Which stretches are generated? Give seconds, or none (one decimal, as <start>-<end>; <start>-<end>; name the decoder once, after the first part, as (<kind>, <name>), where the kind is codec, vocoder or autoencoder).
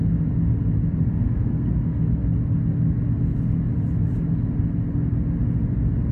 1.2-1.7 (codec, SNAC)